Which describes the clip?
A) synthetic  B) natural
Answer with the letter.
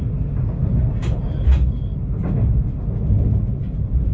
B